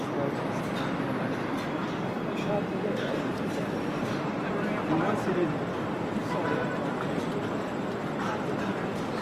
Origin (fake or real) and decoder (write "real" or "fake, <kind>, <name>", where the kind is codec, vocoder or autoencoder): real